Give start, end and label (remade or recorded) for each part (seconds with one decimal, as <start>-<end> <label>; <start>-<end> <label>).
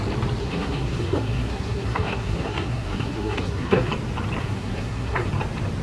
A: 0.0-0.4 recorded; 0.4-3.9 remade; 3.9-4.4 recorded; 4.4-5.3 remade; 5.3-5.8 recorded